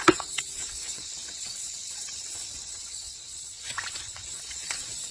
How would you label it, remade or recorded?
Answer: remade